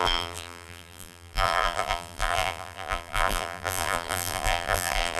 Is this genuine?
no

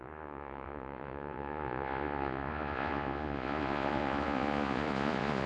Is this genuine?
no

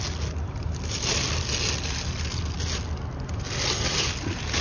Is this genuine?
yes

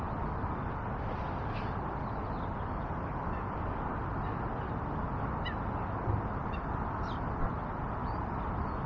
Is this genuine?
yes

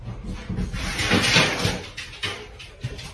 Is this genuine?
yes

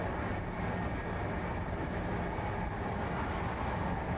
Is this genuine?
yes